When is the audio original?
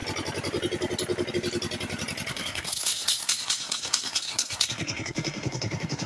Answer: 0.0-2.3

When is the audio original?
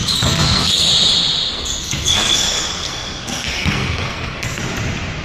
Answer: 0.9-1.5; 4.6-5.2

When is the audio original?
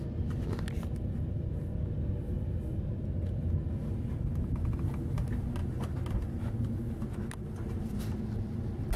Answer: 0.0-9.0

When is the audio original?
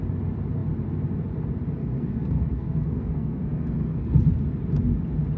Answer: 0.0-1.8; 4.3-5.4